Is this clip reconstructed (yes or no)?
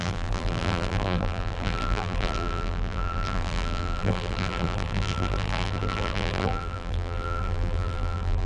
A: yes